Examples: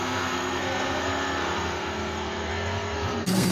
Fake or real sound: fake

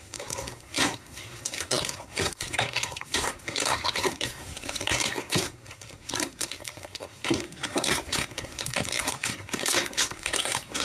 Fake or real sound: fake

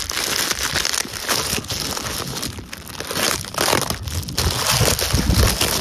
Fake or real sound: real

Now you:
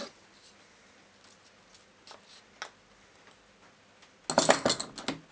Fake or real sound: real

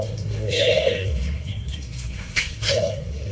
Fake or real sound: fake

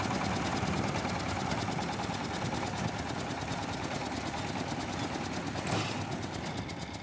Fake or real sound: real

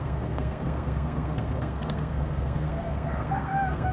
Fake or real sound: fake